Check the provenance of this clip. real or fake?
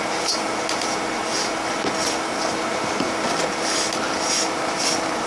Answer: real